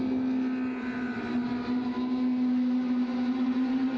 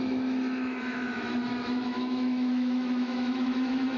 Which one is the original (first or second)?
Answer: first